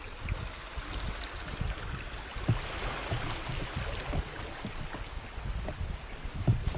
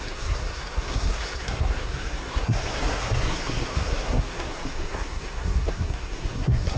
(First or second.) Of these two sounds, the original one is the first